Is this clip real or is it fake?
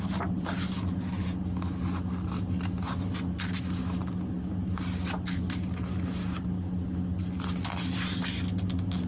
real